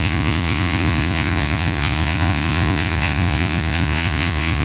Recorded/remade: remade